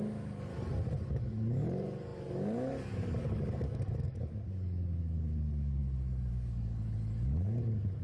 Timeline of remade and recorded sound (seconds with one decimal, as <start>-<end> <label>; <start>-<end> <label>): 0.0-0.5 remade; 0.5-1.1 recorded; 1.1-5.8 remade; 5.8-6.3 recorded; 6.3-8.0 remade